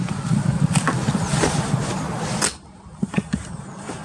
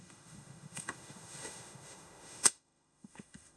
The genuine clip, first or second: first